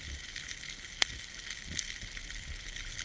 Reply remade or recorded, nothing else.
recorded